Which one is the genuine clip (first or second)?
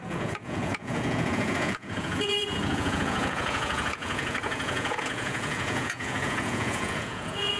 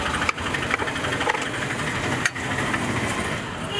second